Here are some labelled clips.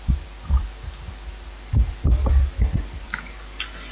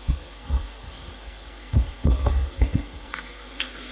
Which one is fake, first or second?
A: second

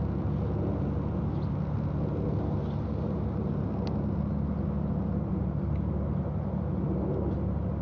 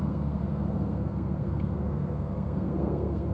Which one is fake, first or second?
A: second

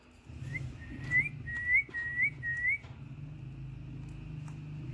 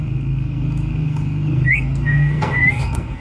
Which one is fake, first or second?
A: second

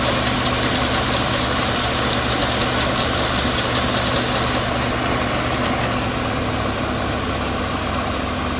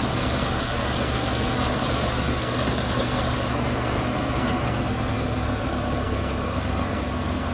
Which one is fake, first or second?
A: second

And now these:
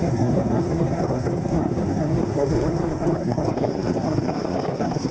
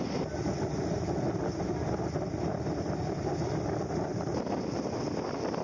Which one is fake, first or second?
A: first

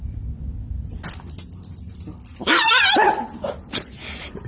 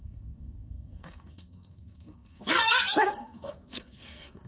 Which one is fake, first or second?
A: second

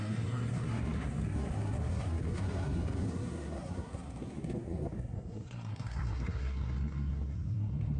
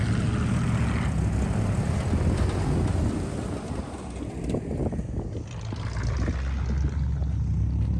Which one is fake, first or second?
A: first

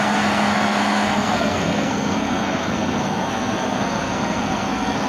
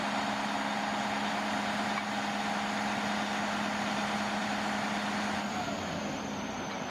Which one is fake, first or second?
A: first